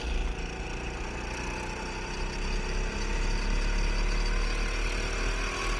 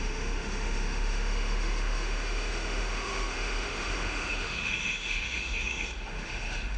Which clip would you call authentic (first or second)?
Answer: first